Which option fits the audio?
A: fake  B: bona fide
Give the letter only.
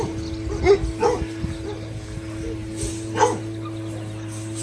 B